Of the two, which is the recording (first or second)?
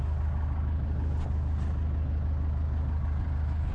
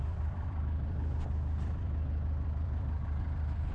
first